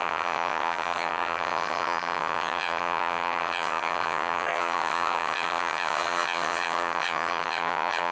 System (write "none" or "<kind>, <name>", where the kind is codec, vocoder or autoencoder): vocoder, HiFi-GAN